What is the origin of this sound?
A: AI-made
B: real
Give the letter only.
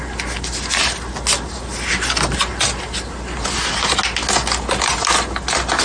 B